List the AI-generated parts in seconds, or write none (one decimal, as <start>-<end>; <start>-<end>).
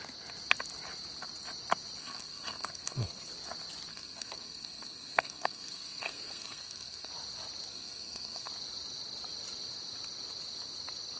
2.0-3.3; 3.9-7.1; 7.7-8.5